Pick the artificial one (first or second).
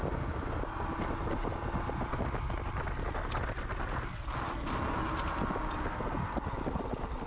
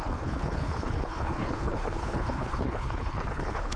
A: second